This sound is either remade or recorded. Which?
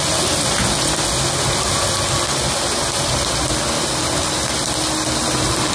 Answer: recorded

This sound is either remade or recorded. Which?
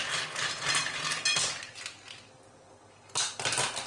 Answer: recorded